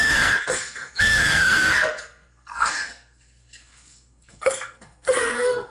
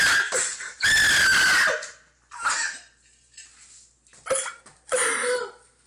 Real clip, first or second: second